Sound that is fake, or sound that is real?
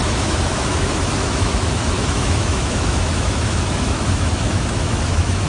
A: fake